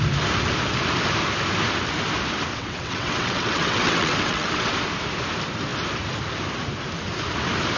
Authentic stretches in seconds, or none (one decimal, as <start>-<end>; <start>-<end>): 0.0-2.5; 4.7-7.8